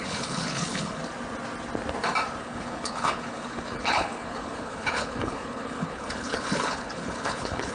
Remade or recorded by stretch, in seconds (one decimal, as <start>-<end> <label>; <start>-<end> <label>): 0.0-1.0 remade; 1.0-2.4 recorded; 2.4-7.7 remade